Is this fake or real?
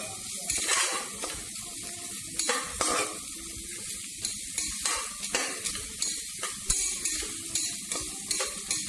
real